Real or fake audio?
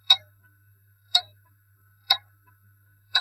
fake